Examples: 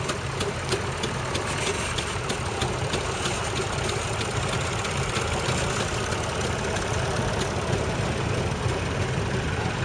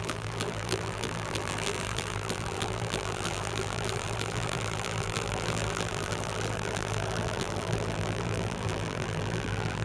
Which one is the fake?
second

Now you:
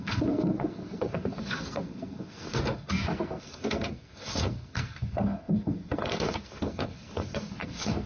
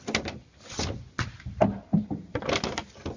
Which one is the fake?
first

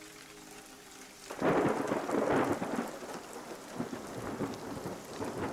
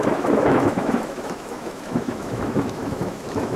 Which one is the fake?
second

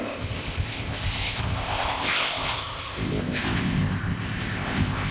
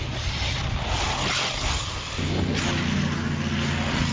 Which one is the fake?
first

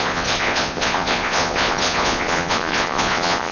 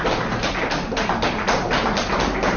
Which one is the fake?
first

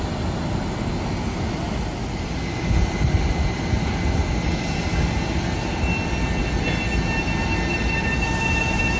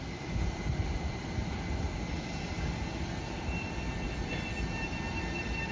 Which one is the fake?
second